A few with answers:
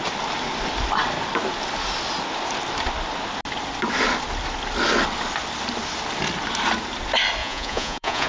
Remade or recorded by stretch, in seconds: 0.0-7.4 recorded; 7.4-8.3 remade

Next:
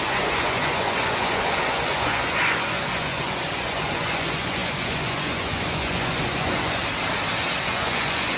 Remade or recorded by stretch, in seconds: 0.0-6.8 remade; 6.8-7.6 recorded; 7.6-8.4 remade

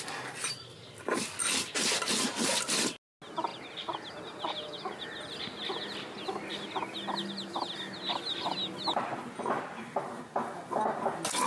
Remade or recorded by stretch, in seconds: 0.0-11.5 recorded

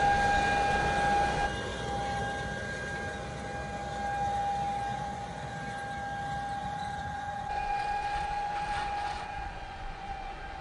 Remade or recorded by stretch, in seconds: 0.0-4.9 recorded; 4.9-5.5 remade; 5.5-6.6 recorded; 6.6-10.6 remade

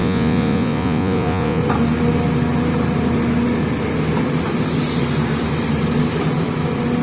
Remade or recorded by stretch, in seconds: 0.0-1.6 remade; 1.6-7.0 recorded

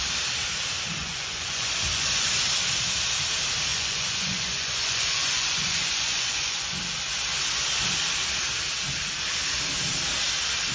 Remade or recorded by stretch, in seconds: 0.0-1.0 recorded; 1.0-2.3 remade; 2.3-3.7 recorded; 3.7-6.8 remade; 6.8-10.7 recorded

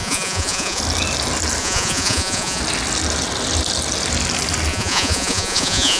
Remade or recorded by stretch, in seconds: 0.0-0.8 remade; 0.8-1.6 recorded; 1.6-2.6 remade; 2.6-4.7 recorded; 4.7-6.0 remade